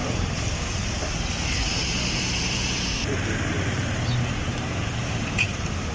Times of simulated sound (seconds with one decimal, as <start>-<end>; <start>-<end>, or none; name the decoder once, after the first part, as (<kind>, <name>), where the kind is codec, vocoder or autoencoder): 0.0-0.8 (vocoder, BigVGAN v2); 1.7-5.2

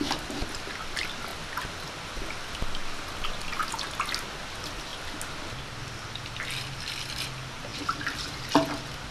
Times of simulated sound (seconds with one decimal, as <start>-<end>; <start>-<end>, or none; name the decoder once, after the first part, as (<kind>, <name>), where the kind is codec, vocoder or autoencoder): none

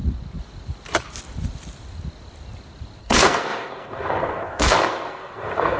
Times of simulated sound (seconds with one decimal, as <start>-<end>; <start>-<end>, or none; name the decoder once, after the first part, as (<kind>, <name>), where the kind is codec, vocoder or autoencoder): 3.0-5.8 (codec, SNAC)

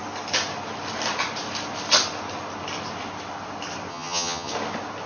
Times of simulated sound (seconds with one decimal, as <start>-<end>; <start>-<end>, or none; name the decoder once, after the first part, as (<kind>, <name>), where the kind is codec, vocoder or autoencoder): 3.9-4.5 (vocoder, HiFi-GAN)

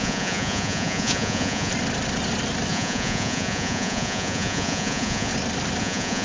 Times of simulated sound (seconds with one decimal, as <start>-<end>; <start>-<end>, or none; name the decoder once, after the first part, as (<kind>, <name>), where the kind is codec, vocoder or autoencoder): 0.0-1.7 (vocoder, Vocos); 2.7-5.3; 5.8-6.2

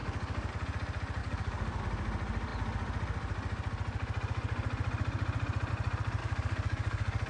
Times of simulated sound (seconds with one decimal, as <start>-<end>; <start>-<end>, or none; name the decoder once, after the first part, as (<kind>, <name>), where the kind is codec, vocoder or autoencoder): 0.0-0.5 (codec, DAC); 1.2-1.8; 6.2-7.3

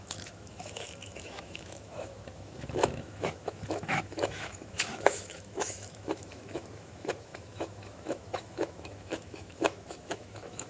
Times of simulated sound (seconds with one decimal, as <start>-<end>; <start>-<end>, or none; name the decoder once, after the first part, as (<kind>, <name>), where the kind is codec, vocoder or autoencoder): 0.0-10.7 (autoencoder, DAC-VAE)

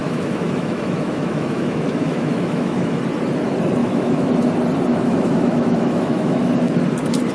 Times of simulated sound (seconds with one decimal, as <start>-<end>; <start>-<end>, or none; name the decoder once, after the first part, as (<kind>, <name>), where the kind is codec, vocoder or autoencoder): 0.0-3.0 (autoencoder, DAC-VAE); 3.8-4.3; 4.9-6.5